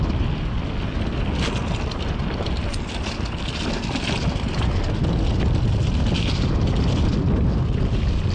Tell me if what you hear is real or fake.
real